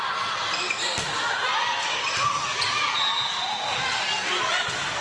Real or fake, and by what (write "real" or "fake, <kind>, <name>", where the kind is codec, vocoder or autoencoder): real